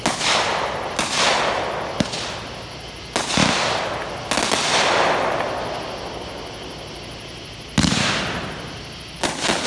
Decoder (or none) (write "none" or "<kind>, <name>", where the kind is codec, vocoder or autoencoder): none